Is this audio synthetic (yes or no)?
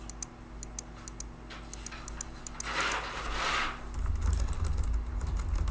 no